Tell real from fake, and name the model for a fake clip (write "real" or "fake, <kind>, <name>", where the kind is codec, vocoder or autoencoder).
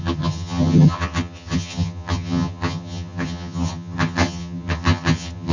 fake, vocoder, HiFi-GAN